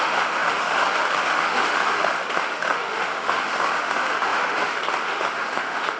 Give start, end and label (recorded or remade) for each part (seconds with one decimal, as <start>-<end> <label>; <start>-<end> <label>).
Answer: 0.0-6.0 remade

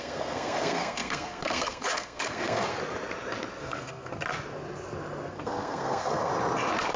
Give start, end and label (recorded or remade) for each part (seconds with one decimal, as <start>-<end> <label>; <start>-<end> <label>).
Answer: 0.0-2.7 remade; 2.7-3.6 recorded; 3.6-4.1 remade; 4.1-5.3 recorded; 5.3-6.3 remade; 6.3-7.0 recorded

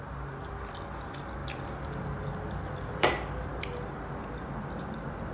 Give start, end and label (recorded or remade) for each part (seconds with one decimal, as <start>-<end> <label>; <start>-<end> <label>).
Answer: 0.0-1.4 recorded; 1.4-4.1 remade; 4.1-5.3 recorded